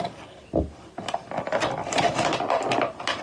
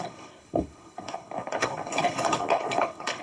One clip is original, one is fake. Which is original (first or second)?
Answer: first